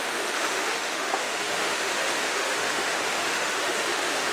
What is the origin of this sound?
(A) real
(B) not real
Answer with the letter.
B